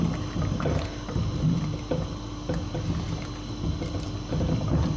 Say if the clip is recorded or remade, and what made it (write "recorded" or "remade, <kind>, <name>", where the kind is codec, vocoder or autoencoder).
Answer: recorded